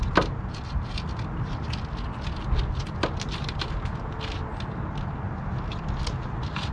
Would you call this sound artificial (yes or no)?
no